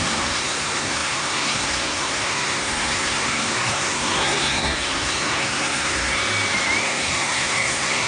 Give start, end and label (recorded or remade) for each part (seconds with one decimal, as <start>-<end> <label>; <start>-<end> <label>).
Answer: 0.0-6.2 remade; 6.2-6.8 recorded; 6.8-8.1 remade